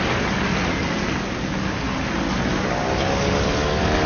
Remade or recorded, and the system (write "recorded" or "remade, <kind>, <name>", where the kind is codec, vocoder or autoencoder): recorded